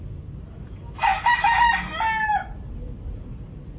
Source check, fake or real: real